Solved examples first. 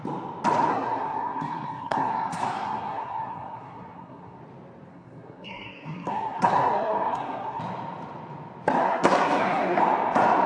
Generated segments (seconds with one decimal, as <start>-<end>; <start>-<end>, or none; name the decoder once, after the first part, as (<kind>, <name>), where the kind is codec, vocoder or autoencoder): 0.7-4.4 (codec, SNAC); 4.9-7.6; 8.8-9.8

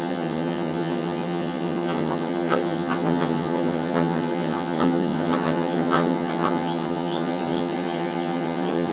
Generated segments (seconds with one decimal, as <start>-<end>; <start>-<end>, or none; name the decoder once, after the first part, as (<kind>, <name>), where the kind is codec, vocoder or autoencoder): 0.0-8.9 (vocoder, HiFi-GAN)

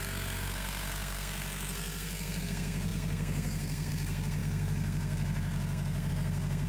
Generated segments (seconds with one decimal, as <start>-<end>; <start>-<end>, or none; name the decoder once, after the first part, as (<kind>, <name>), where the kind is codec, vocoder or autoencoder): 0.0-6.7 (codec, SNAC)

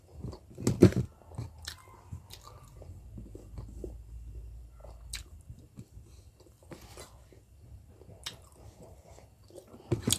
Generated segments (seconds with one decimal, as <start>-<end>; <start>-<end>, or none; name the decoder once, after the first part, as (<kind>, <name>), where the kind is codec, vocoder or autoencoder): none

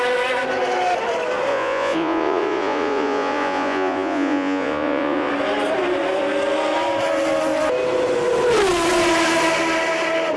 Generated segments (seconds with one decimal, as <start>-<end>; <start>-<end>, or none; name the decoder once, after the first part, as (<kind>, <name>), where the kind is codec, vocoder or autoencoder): 1.5-5.3 (vocoder, Vocos)

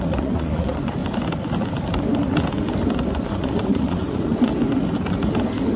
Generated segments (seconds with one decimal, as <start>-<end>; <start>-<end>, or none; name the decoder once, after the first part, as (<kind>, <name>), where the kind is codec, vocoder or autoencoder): 0.0-1.0 (vocoder, Vocos); 3.1-4.5

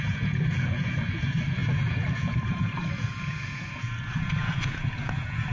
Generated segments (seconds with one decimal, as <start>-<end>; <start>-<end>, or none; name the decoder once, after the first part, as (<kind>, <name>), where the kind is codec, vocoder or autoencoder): 0.0-5.5 (vocoder, Vocos)